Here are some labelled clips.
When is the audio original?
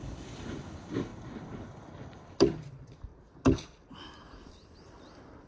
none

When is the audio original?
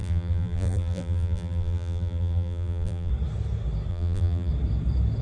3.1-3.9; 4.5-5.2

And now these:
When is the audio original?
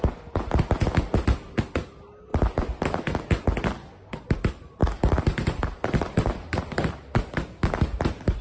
0.0-2.3; 3.0-4.8; 6.9-8.4